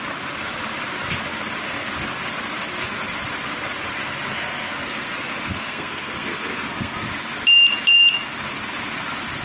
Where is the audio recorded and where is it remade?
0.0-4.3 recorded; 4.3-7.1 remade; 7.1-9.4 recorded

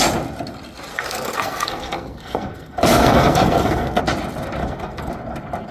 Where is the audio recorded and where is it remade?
0.0-0.9 recorded; 0.9-4.0 remade; 4.0-4.6 recorded; 4.6-5.1 remade; 5.1-5.7 recorded